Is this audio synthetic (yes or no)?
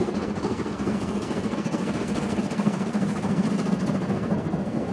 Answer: yes